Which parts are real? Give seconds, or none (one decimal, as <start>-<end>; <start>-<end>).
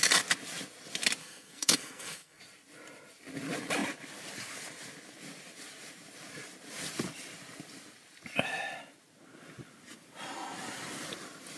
0.0-1.2; 2.4-11.6